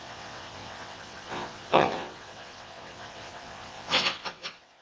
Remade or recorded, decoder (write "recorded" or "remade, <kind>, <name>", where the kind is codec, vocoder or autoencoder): remade, vocoder, WaveNeXt